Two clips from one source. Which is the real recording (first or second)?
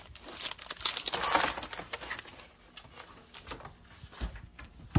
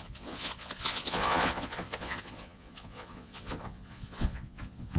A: first